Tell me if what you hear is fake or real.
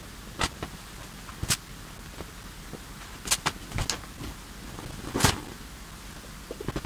real